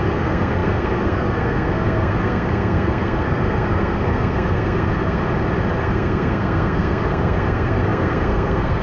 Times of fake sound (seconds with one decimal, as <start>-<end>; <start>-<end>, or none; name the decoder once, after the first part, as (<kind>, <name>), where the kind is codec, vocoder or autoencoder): 0.0-5.2 (codec, SNAC); 5.8-8.8